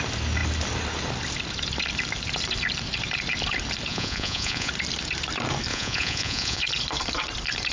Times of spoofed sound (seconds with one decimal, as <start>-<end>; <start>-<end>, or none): 3.9-4.7; 5.7-6.6